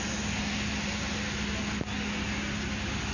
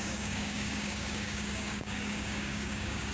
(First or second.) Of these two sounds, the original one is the first